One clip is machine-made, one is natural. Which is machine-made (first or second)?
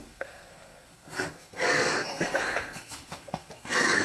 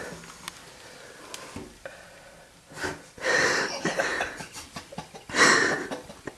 first